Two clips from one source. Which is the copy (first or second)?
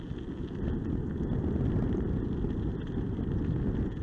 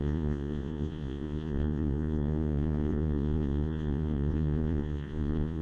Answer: second